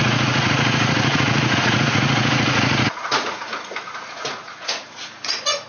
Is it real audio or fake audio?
fake